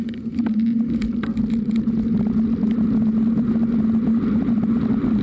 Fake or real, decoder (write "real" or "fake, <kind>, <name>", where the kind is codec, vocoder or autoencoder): real